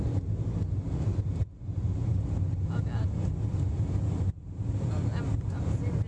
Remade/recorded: recorded